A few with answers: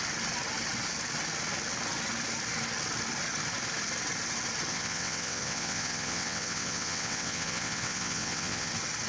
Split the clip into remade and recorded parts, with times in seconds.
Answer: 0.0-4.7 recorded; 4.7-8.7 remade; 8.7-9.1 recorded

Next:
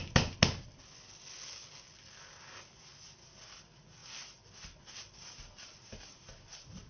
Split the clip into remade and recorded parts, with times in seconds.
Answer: 0.0-6.9 recorded

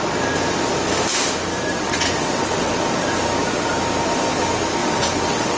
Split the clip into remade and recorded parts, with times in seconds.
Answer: 0.0-1.7 recorded; 1.7-2.8 remade; 2.8-4.8 recorded; 4.8-5.6 remade

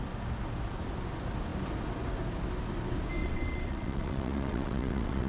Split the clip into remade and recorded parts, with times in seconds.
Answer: 0.0-3.2 recorded; 3.2-5.3 remade

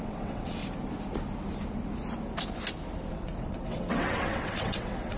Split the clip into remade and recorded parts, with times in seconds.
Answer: 0.0-0.6 remade; 0.6-3.1 recorded; 3.1-5.2 remade

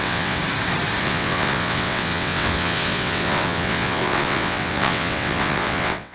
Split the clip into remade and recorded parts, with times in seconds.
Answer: 0.0-0.4 remade; 0.4-1.0 recorded; 1.0-6.1 remade

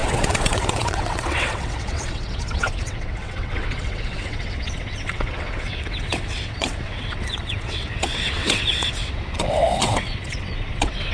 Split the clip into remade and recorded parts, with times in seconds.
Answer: 0.0-11.1 remade

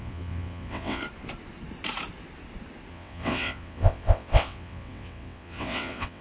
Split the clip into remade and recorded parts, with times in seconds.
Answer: 0.0-1.0 remade; 1.0-2.9 recorded; 2.9-6.2 remade